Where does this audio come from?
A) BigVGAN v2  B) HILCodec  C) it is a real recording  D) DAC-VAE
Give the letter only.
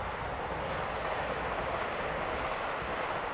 C